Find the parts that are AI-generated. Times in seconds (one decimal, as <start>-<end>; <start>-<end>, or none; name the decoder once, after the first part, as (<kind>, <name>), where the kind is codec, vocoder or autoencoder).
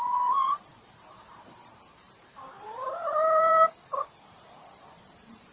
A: 0.0-5.5 (vocoder, BigVGAN v2)